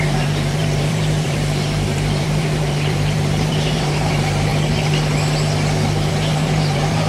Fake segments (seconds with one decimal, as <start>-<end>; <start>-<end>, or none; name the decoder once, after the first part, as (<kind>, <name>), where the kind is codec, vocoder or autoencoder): 0.0-4.5 (vocoder, BigVGAN v2); 6.1-7.1